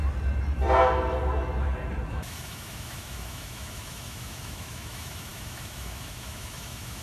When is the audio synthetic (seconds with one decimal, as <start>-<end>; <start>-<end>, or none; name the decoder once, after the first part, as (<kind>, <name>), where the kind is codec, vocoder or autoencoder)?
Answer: 2.1-7.0 (autoencoder, DAC-VAE)